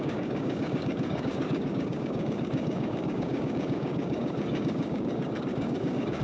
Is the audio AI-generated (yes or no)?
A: yes